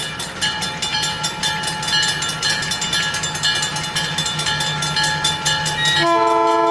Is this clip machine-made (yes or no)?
no